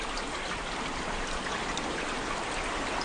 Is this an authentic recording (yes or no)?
yes